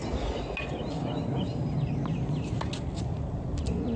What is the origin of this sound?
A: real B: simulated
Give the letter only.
A